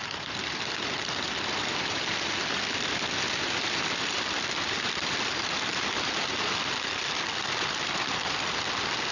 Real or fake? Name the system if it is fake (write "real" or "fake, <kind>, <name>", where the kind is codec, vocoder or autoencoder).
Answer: fake, vocoder, BigVGAN v2